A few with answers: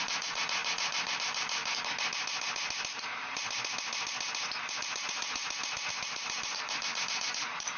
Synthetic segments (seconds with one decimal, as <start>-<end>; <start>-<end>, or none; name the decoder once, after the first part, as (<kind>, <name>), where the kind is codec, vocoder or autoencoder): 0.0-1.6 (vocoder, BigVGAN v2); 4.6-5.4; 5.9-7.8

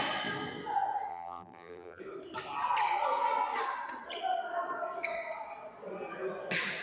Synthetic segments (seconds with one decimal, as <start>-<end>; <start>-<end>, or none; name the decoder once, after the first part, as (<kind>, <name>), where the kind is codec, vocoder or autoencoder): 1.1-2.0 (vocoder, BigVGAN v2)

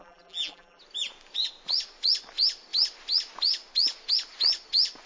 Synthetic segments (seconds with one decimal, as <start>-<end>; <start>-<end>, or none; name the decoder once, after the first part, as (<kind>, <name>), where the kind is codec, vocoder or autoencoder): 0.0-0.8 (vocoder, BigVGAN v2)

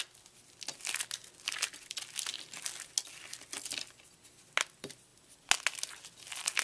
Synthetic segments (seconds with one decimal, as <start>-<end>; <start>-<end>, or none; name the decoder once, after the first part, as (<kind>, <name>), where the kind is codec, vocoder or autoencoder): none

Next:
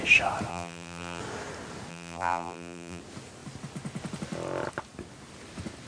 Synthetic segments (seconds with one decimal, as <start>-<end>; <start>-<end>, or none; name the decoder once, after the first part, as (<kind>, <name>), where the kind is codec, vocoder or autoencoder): 0.5-1.2 (vocoder, BigVGAN v2); 1.9-3.0

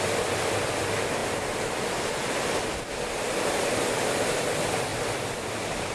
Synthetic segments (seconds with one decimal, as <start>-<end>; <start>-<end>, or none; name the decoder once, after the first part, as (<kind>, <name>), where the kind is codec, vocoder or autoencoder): none

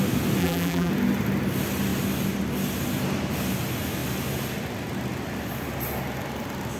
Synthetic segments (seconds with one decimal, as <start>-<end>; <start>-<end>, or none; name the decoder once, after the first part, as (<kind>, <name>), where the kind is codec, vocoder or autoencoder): 0.4-0.9 (vocoder, BigVGAN v2)